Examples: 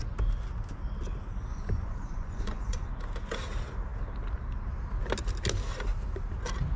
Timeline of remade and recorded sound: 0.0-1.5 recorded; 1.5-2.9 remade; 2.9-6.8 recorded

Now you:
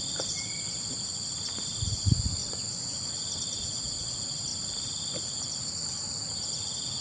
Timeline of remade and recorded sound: 0.0-2.4 recorded; 2.4-3.1 remade; 3.1-7.0 recorded

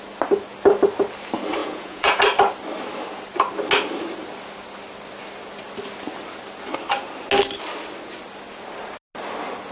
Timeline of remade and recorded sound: 0.0-1.6 recorded; 1.6-2.2 remade; 2.2-9.7 recorded